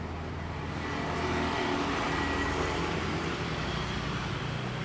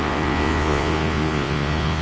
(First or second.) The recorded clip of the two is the first